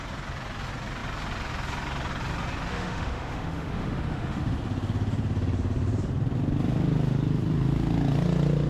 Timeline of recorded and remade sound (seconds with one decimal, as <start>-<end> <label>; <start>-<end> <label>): 0.0-2.7 recorded; 2.7-4.4 remade; 4.4-8.7 recorded